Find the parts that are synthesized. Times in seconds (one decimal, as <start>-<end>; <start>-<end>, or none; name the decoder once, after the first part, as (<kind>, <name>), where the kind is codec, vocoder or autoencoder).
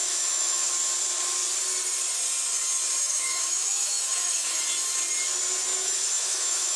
0.0-0.7 (autoencoder, DAC-VAE); 3.0-4.6; 5.7-6.8